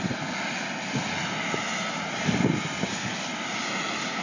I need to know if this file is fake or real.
real